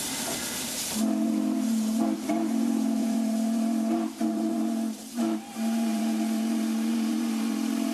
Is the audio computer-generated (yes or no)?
yes